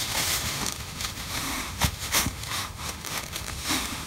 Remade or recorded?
remade